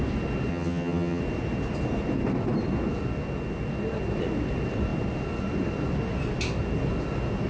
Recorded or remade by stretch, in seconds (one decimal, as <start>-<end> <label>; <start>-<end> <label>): 0.0-0.5 recorded; 0.5-1.2 remade; 1.2-7.5 recorded